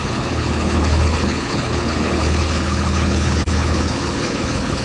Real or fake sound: fake